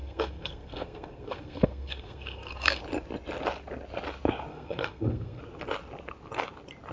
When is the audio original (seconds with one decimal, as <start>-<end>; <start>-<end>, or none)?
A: 2.8-4.5; 5.4-6.9